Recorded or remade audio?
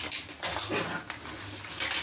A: recorded